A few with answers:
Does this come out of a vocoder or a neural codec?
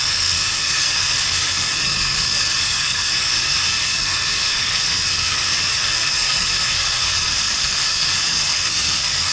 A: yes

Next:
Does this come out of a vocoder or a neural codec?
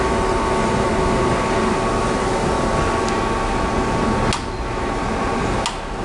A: no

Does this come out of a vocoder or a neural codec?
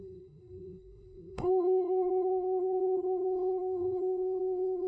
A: yes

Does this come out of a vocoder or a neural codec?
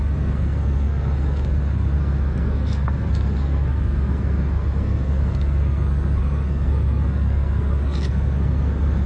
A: yes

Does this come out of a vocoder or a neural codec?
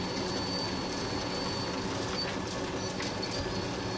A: no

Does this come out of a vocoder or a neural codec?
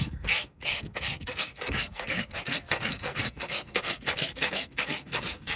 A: yes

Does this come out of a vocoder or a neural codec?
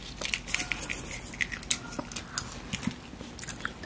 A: no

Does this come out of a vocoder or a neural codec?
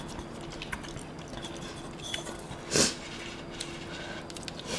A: no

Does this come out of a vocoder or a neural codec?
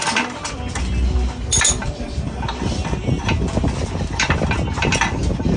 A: no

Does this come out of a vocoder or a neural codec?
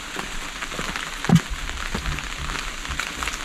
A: no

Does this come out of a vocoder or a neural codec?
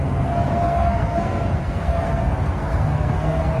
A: yes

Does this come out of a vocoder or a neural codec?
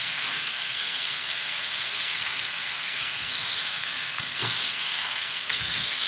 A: yes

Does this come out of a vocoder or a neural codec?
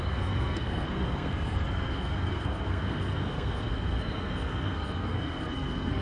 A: yes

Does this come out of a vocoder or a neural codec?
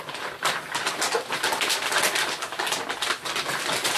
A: no